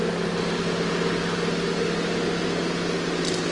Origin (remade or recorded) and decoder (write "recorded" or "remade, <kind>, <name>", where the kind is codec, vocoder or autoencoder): recorded